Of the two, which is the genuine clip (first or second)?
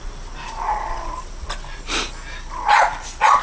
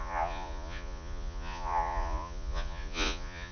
first